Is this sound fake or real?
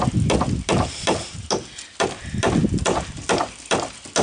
real